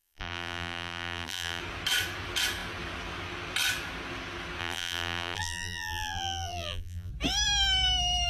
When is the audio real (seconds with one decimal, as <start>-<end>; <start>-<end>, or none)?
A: 1.6-4.6; 7.1-8.3